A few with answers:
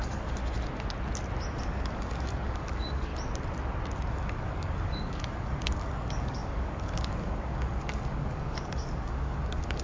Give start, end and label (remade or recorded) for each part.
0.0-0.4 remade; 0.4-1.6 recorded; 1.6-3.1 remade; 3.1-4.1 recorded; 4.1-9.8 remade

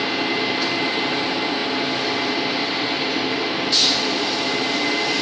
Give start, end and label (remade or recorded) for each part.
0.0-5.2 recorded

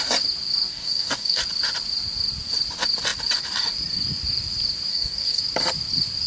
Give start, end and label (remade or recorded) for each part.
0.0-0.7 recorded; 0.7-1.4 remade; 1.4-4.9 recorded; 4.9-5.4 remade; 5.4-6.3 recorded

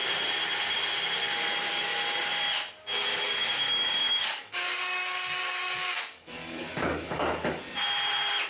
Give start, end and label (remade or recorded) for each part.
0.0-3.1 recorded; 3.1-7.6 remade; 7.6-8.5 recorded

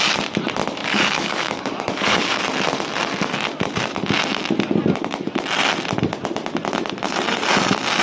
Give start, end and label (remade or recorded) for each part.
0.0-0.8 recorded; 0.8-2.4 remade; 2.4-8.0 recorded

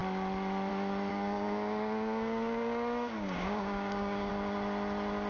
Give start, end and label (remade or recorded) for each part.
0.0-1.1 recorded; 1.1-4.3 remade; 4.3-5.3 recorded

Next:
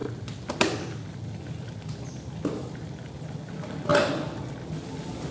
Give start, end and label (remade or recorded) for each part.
0.0-5.3 recorded

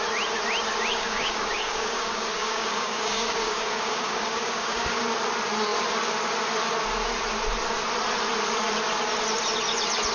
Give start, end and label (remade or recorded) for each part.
0.0-0.9 recorded; 0.9-5.0 remade; 5.0-10.1 recorded